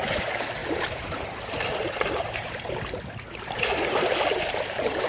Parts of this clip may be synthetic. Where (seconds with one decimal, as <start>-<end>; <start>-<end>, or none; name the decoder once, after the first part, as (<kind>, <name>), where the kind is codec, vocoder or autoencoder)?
0.0-5.1 (vocoder, BigVGAN v2)